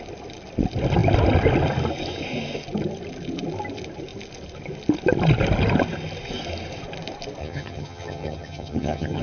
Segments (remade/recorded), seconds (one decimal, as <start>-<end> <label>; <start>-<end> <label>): 0.0-7.4 recorded; 7.4-9.2 remade